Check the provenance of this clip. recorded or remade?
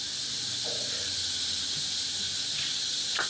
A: remade